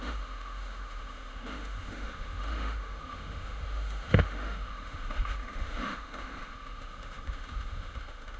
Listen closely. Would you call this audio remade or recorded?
remade